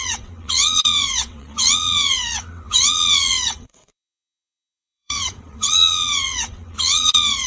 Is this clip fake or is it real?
fake